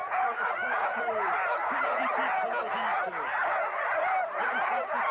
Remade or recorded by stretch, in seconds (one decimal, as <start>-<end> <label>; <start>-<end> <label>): 0.0-1.0 remade; 1.0-5.1 recorded